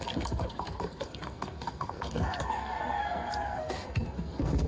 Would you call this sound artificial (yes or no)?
yes